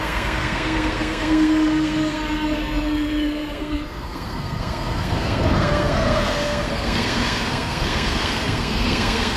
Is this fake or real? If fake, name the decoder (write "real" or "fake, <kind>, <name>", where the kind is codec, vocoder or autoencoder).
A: fake, codec, SNAC